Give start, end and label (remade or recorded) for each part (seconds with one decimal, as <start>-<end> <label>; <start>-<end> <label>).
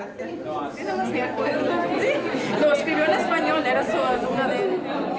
0.0-5.2 recorded